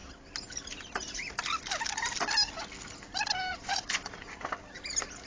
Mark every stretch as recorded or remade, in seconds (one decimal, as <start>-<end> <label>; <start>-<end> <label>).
0.0-3.5 recorded; 3.5-4.3 remade; 4.3-5.3 recorded